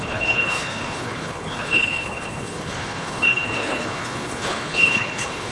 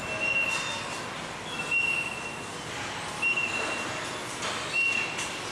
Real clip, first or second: second